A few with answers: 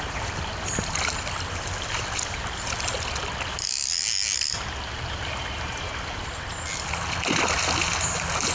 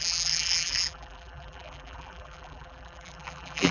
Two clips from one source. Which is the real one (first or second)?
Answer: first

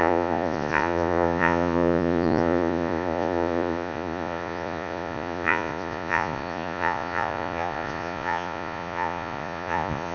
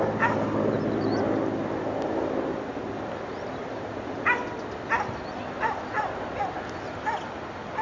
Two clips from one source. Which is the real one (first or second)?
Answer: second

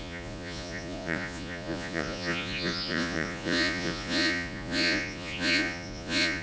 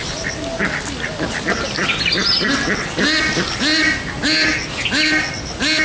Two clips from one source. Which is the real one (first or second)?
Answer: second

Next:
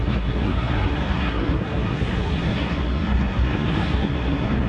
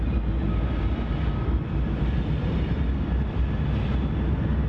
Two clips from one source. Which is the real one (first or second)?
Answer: second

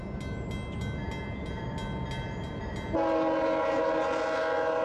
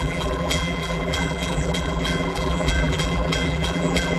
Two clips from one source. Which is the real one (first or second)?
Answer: first